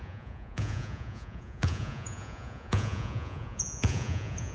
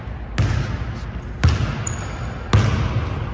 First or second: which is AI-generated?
first